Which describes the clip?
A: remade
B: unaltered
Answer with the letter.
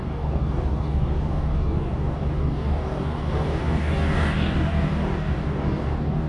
A